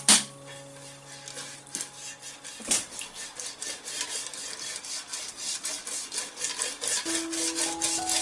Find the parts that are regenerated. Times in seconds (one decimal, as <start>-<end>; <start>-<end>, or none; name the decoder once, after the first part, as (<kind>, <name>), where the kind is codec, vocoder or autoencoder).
none